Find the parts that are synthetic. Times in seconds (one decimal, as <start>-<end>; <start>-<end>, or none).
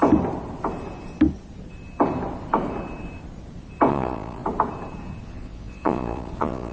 3.9-4.4; 5.2-6.7